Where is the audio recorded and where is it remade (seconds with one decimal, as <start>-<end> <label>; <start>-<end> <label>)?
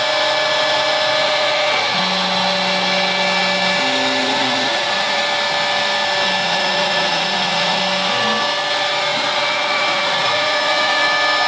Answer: 0.0-1.2 recorded; 1.2-2.0 remade; 2.0-4.2 recorded; 4.2-5.2 remade; 5.2-6.4 recorded; 6.4-7.8 remade; 7.8-9.1 recorded; 9.1-11.0 remade; 11.0-11.5 recorded